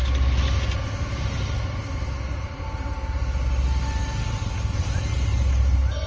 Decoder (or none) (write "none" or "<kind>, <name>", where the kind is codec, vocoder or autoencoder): none